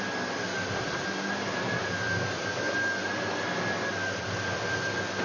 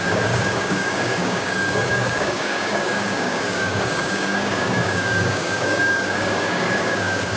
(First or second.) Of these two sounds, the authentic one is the first